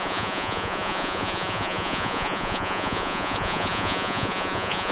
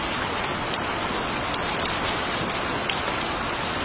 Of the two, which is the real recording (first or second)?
second